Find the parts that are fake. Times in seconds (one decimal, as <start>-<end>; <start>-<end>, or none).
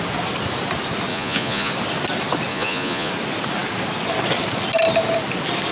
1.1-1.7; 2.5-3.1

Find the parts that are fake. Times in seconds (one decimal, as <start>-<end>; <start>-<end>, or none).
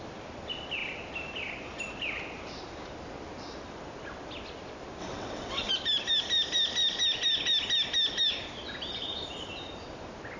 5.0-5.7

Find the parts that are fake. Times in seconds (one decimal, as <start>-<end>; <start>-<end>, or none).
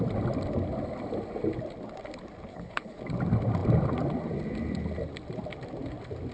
2.5-3.0